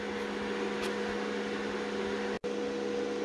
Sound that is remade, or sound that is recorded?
recorded